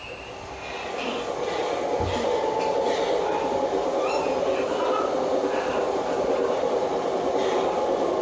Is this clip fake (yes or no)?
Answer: no